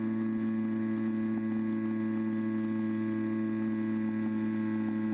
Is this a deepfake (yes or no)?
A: no